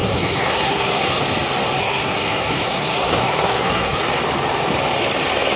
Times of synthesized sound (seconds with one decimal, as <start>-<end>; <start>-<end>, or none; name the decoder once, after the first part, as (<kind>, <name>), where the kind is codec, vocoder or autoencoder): 0.0-1.2 (codec, SNAC); 1.8-4.0